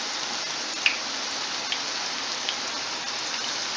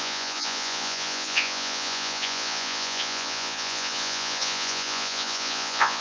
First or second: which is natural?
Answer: first